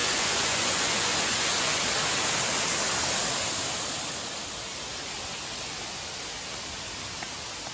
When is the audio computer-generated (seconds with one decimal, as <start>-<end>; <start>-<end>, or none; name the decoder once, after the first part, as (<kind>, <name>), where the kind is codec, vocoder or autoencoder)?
0.0-1.8 (vocoder, Vocos)